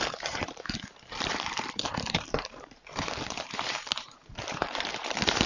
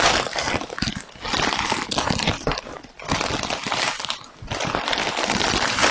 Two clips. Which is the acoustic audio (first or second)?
second